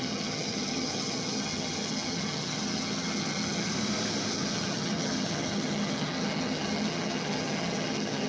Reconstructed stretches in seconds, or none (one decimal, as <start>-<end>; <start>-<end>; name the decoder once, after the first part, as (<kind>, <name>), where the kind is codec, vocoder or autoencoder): 0.0-3.7 (vocoder, HiFi-GAN); 4.3-8.3